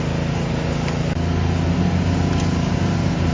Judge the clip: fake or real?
real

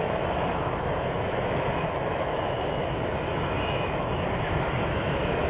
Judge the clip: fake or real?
fake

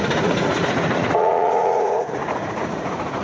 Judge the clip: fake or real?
fake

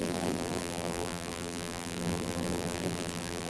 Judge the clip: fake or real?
fake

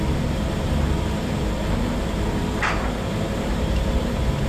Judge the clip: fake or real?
fake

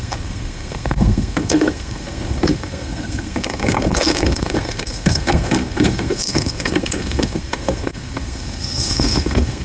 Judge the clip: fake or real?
fake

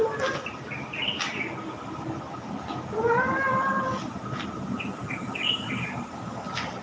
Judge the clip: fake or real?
real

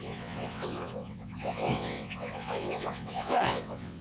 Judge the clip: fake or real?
fake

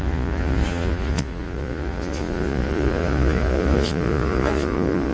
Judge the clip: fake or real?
fake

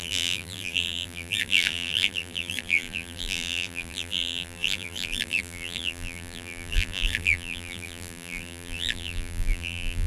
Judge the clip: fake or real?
fake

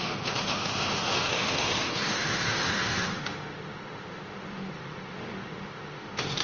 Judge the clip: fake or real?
fake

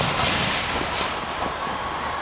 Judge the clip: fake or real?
fake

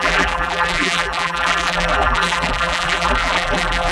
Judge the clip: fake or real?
fake